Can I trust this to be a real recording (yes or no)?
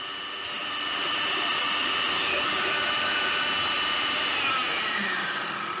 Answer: no